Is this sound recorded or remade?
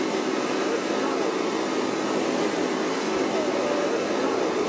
recorded